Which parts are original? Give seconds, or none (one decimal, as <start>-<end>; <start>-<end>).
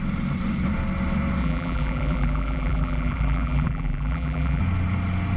0.0-1.4; 4.6-5.4